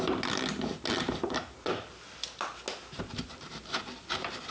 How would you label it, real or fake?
real